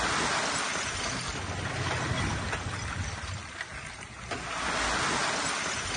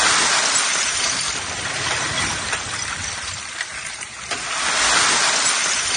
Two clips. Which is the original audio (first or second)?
first